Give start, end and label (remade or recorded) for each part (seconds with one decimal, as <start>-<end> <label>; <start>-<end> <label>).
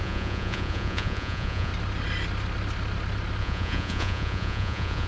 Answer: 0.0-1.7 remade; 1.7-3.4 recorded; 3.4-5.1 remade